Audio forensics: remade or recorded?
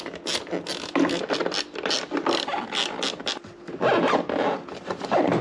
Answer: recorded